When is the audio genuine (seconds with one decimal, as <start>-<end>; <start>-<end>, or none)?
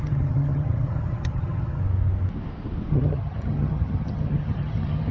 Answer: 1.8-2.9